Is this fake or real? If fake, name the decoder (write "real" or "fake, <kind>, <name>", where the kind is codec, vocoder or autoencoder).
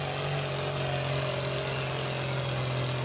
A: real